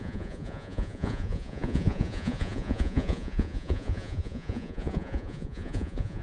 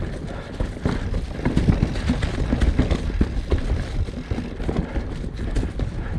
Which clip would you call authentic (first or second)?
second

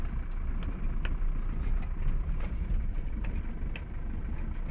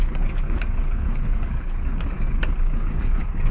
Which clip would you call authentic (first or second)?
first